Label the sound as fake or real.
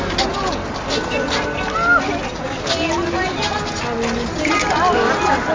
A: real